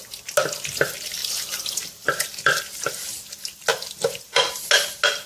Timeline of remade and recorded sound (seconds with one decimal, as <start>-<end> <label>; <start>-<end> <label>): 0.0-1.2 recorded; 1.2-2.6 remade; 2.6-3.7 recorded; 3.7-4.5 remade; 4.5-5.3 recorded